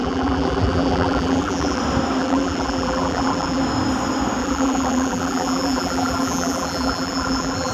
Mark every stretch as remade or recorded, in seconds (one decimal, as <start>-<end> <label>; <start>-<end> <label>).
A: 0.0-1.8 remade; 1.8-2.2 recorded; 2.2-3.6 remade; 3.6-4.4 recorded; 4.4-7.7 remade